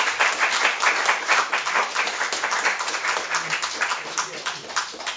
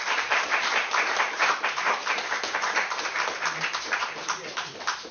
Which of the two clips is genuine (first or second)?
first